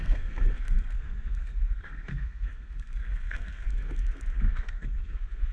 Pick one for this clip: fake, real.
fake